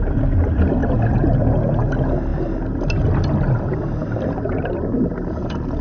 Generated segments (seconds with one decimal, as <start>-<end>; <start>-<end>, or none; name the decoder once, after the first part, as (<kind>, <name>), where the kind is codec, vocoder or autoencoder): none